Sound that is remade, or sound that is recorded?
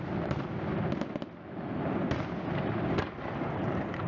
recorded